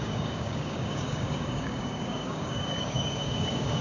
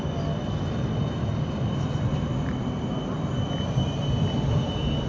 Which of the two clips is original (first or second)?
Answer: second